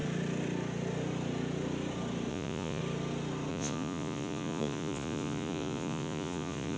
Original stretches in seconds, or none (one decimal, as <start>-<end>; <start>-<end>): 0.0-2.3; 2.8-3.5